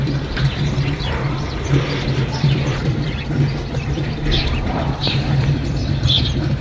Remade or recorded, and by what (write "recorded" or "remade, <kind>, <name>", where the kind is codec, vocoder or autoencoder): remade, vocoder, BigVGAN v2